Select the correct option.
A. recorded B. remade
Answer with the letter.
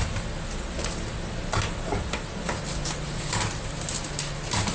A